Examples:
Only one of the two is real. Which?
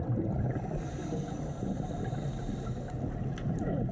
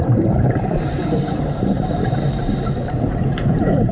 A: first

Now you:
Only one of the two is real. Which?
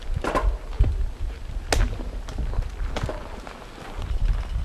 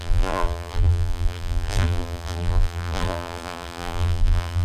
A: first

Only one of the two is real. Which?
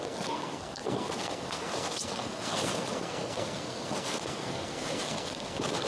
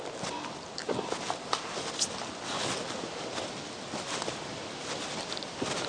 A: second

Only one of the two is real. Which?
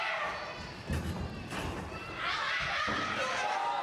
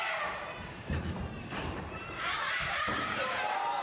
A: first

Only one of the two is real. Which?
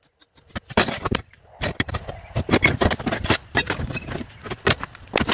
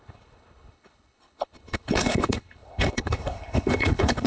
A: first